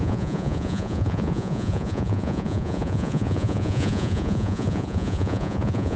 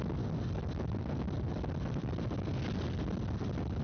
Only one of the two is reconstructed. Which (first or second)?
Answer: first